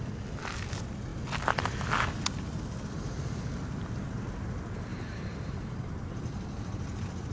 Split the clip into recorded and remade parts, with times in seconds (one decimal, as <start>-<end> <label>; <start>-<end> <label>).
0.0-4.9 recorded; 4.9-5.6 remade; 5.6-7.3 recorded